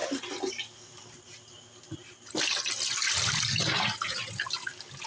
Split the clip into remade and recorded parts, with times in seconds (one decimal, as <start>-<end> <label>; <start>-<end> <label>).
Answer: 0.0-5.1 recorded